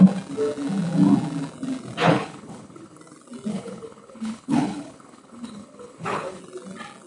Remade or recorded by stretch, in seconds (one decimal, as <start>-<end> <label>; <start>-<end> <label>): 0.0-2.0 recorded; 2.0-3.0 remade; 3.0-3.5 recorded; 3.5-6.4 remade; 6.4-7.1 recorded